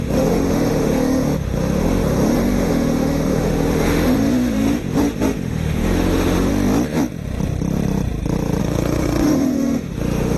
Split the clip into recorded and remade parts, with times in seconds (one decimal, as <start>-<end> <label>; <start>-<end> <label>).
0.0-6.5 remade; 6.5-8.6 recorded; 8.6-10.4 remade